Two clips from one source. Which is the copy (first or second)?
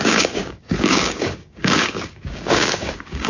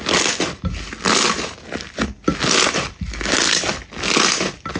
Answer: first